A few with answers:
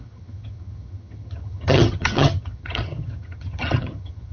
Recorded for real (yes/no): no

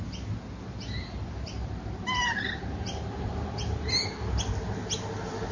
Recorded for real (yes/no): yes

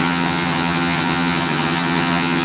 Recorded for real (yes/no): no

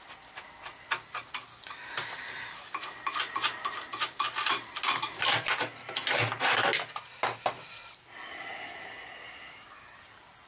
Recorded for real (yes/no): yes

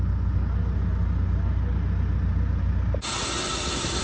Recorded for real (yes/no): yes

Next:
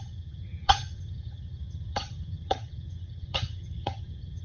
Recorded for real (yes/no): no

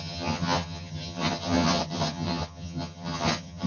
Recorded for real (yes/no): no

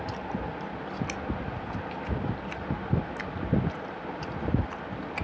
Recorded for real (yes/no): yes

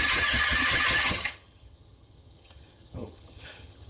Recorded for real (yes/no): no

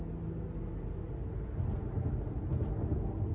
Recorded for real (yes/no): yes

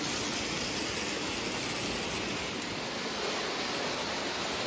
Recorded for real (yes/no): yes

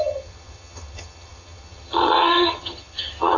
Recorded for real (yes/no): no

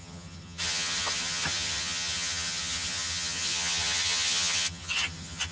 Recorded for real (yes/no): no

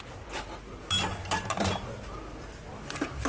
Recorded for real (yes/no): yes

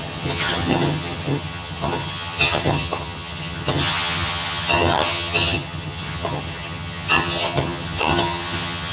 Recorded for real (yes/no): no